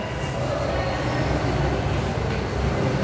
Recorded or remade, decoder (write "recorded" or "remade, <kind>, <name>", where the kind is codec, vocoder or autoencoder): recorded